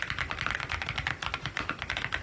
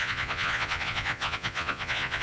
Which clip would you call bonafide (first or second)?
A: first